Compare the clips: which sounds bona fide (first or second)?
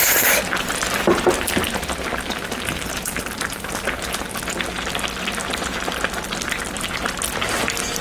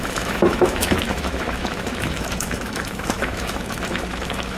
first